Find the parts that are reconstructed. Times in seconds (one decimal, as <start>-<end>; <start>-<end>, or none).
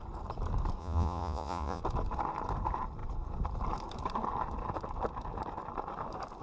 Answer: 0.8-1.8